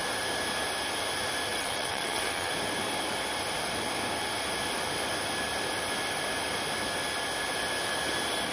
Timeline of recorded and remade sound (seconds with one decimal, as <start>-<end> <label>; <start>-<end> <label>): 0.0-1.5 recorded; 1.5-2.5 remade; 2.5-8.5 recorded